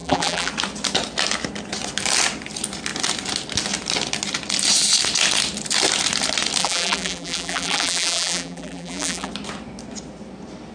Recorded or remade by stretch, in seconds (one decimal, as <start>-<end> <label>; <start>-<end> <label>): 0.0-0.5 remade; 0.5-6.6 recorded; 6.6-9.3 remade; 9.3-10.7 recorded